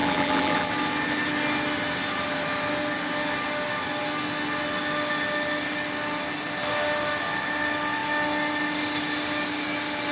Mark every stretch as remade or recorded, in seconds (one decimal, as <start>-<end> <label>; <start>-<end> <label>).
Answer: 0.0-0.7 remade; 0.7-10.1 recorded